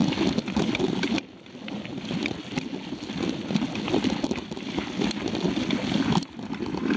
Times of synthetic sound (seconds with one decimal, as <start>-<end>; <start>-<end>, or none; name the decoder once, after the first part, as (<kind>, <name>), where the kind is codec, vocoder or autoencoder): none